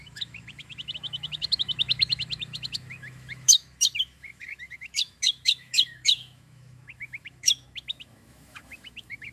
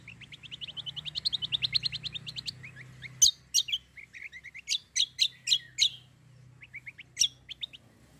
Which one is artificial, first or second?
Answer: first